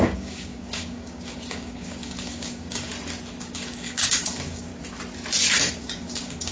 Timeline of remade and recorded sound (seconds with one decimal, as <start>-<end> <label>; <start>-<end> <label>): 0.0-2.9 remade; 2.9-3.4 recorded; 3.4-4.7 remade; 4.7-5.8 recorded; 5.8-6.5 remade